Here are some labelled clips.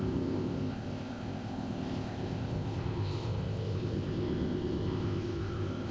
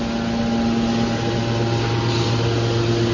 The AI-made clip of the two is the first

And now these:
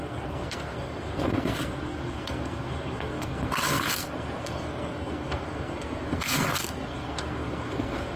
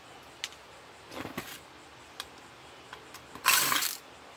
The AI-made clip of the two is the first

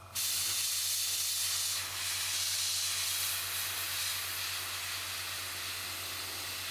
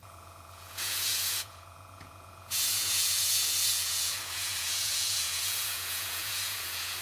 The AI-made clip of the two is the second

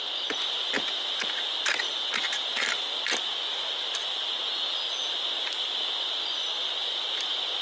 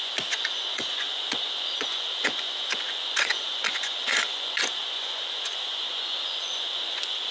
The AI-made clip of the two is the second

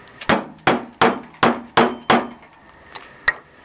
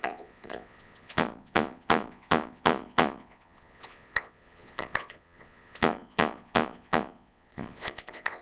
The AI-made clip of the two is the second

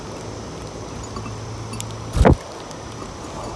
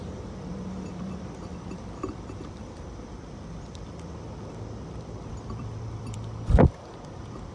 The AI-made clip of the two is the second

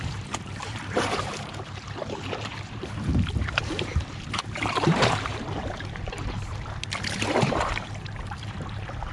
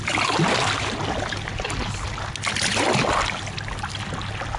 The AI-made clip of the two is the first